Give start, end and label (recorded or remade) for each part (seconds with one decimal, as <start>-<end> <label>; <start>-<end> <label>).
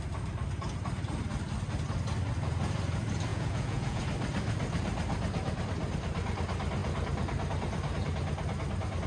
0.0-3.3 recorded; 3.3-4.0 remade; 4.0-9.1 recorded